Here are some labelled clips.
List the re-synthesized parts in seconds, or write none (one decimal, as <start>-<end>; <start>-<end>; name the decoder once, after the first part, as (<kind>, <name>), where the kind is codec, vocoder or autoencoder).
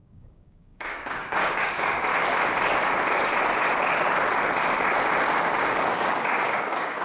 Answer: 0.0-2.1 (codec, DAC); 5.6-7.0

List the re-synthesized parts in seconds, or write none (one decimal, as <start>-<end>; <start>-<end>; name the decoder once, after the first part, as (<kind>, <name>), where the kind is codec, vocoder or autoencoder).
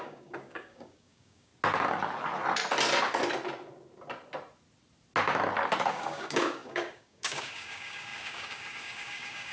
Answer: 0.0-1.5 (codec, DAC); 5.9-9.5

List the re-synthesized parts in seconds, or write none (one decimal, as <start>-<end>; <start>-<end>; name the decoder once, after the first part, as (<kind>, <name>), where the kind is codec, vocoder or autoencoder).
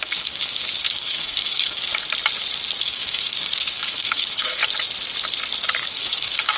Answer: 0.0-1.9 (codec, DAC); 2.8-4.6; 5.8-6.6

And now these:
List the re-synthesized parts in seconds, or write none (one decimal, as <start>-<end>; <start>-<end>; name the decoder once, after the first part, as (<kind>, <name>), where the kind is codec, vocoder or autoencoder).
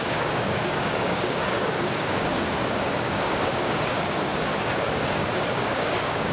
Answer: 0.0-6.3 (codec, DAC)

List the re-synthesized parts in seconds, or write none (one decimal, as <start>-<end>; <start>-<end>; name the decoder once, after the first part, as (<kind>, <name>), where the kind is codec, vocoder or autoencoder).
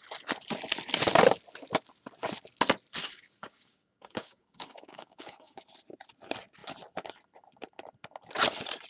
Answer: 3.0-5.6 (codec, DAC)